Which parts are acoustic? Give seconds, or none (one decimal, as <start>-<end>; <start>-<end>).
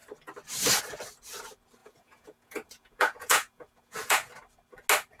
0.0-1.8; 4.3-5.2